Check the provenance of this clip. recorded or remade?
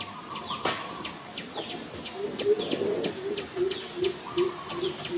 recorded